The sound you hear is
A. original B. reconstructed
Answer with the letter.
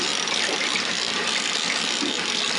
A